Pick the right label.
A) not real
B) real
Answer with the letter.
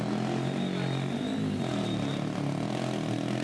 B